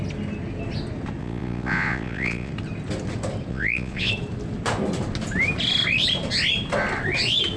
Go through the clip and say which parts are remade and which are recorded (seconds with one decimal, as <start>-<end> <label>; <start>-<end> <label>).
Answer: 0.0-1.2 recorded; 1.2-2.5 remade; 2.5-3.5 recorded; 3.5-4.1 remade; 4.1-7.6 recorded